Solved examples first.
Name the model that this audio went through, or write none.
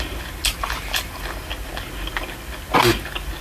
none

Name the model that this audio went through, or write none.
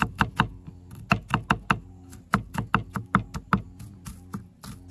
none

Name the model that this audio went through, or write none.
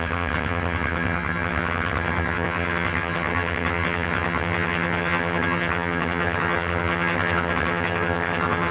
vocoder, HiFi-GAN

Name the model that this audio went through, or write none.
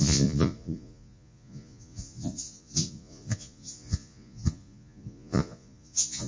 vocoder, Vocos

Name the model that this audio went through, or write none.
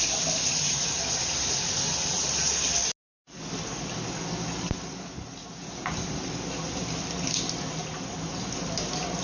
none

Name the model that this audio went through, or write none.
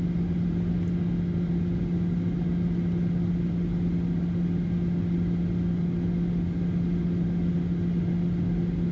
none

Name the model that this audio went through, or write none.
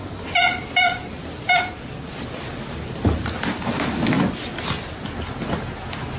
none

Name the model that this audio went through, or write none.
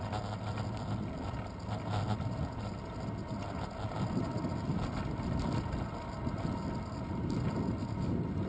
none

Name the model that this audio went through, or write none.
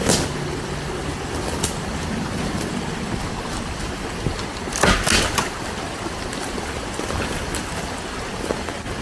none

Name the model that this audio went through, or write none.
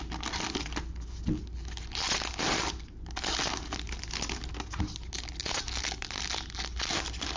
none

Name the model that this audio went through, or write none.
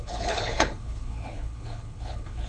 codec, HILCodec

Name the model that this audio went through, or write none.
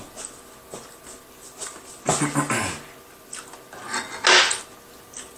none